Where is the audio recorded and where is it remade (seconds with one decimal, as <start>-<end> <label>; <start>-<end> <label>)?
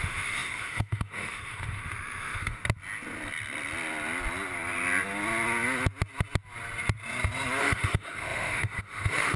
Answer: 0.0-2.6 remade; 2.6-7.6 recorded; 7.6-9.4 remade